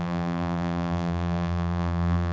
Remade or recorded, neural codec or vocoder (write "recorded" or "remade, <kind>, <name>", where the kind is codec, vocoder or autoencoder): remade, vocoder, BigVGAN v2